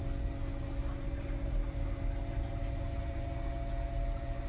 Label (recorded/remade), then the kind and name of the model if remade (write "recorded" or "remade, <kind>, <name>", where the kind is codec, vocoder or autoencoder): recorded